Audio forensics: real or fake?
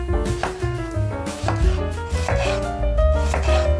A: real